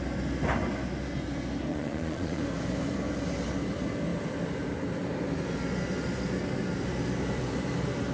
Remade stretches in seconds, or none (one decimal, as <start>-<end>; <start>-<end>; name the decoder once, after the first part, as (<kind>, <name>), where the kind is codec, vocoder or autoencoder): 1.7-2.4 (vocoder, Vocos)